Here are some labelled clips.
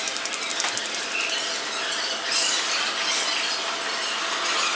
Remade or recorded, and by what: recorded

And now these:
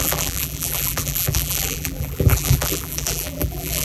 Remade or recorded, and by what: remade, vocoder, BigVGAN v2